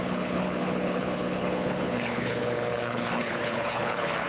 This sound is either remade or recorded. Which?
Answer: remade